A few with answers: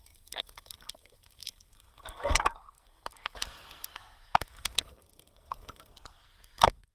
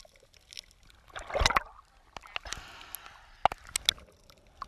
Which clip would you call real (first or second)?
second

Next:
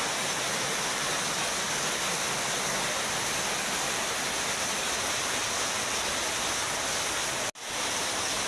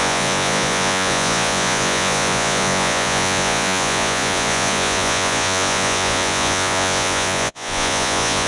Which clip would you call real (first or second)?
first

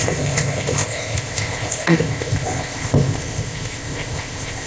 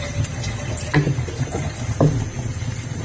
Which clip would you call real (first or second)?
second